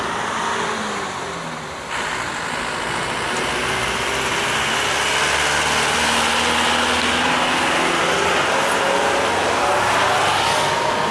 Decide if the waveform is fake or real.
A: real